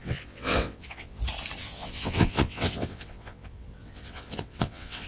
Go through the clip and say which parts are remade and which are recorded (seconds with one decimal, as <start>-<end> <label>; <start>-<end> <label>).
0.0-1.2 remade; 1.2-1.6 recorded; 1.6-5.1 remade